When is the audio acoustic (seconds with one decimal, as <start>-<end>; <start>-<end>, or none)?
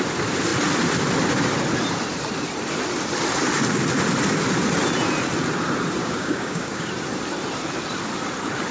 0.0-6.0; 6.9-8.7